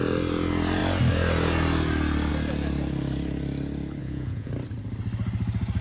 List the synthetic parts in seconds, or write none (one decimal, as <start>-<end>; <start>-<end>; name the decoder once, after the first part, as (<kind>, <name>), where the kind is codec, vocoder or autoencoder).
4.0-4.5 (vocoder, Vocos)